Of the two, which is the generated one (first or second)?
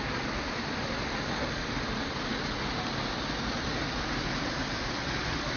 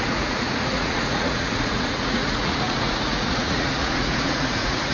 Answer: second